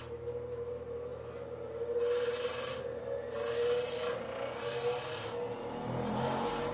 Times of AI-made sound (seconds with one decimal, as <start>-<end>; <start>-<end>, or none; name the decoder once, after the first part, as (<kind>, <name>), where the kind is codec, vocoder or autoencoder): none

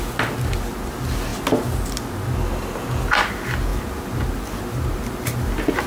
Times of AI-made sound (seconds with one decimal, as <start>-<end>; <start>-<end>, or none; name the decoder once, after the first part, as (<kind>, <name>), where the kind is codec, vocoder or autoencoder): 3.7-5.5 (vocoder, BigVGAN v2)